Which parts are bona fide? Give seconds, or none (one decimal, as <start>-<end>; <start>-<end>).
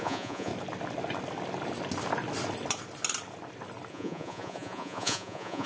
0.5-3.9